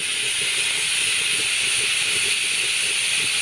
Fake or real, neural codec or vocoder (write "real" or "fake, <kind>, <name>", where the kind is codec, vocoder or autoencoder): real